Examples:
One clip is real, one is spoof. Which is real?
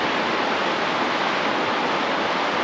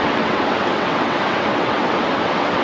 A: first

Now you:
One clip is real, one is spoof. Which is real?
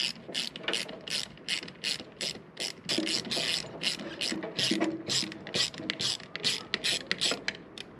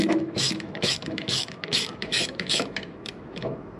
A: first